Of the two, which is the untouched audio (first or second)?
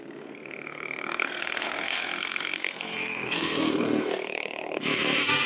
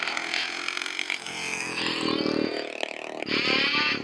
second